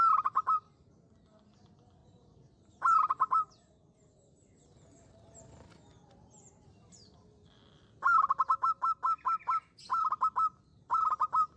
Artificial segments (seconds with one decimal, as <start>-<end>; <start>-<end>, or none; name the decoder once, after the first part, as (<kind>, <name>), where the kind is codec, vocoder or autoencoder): 2.0-6.9 (vocoder, BigVGAN v2); 10.7-11.6